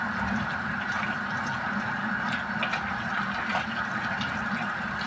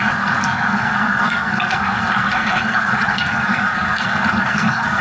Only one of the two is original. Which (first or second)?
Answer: first